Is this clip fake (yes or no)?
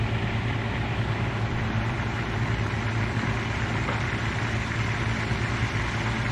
no